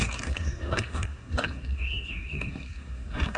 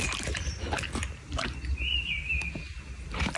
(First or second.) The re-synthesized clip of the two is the first